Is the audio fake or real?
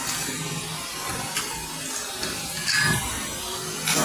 real